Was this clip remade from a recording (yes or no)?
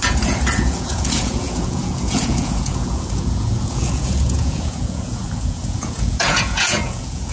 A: yes